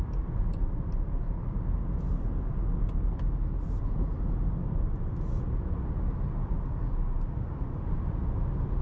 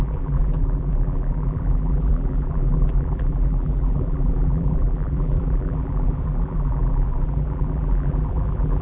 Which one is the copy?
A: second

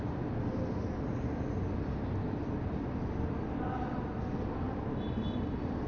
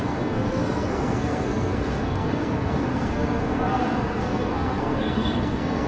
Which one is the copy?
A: second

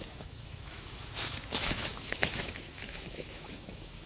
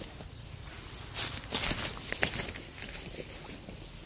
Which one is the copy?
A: first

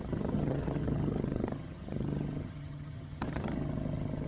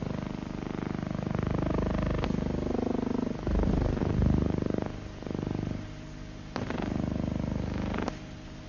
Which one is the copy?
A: first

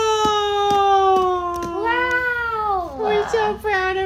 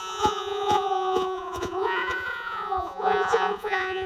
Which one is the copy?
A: second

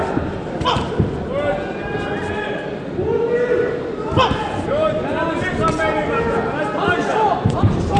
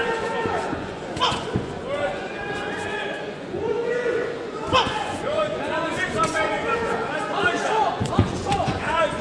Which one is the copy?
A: second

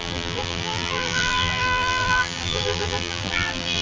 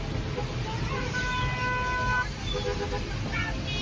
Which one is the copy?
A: first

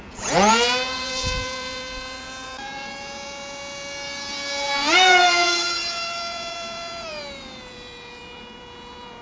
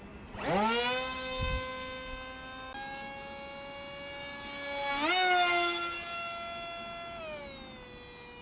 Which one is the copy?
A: first